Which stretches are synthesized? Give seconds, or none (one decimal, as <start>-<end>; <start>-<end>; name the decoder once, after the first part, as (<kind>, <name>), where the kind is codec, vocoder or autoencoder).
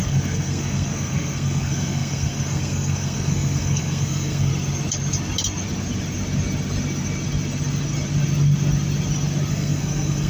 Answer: 0.0-4.5 (codec, SNAC); 9.5-10.3